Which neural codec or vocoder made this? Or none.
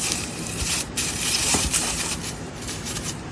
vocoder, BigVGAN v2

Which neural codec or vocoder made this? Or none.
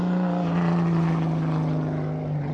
none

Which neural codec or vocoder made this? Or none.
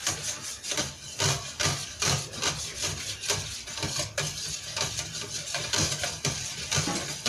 none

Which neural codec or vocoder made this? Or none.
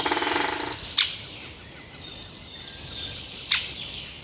none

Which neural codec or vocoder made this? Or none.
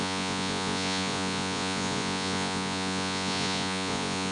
vocoder, Vocos